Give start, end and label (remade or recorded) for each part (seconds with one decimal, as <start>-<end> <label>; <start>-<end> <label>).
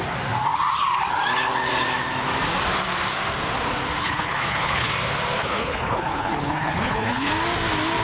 0.0-4.0 recorded; 4.0-4.9 remade; 4.9-5.4 recorded; 5.4-7.3 remade; 7.3-8.0 recorded